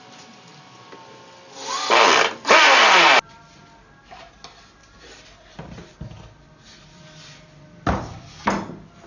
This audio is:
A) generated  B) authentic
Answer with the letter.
B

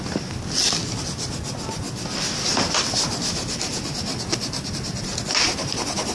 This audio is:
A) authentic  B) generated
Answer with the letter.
A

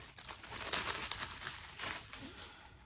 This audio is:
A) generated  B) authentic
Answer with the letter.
B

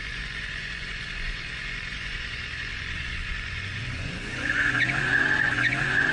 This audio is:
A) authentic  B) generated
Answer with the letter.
B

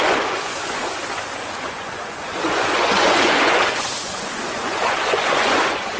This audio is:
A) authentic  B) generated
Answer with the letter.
B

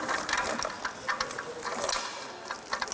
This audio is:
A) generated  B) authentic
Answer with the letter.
B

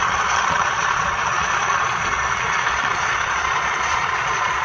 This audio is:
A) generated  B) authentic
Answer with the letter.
A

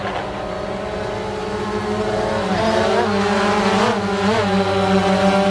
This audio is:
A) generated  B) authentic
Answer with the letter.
B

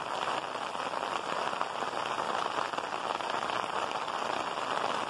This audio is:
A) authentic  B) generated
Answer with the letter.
A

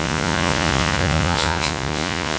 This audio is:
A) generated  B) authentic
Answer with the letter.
A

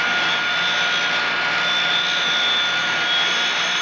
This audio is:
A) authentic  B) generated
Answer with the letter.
A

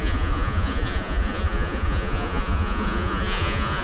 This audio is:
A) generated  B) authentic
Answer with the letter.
A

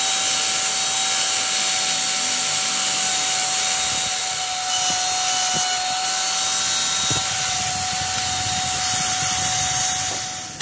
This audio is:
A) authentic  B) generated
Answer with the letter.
A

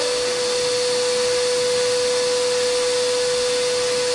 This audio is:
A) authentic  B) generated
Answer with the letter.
A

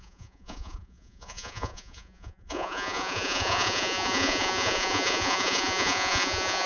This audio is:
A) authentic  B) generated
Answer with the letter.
B